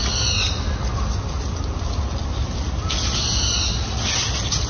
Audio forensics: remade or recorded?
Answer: recorded